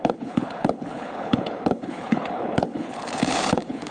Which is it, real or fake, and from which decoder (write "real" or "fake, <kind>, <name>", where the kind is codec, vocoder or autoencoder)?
fake, codec, HILCodec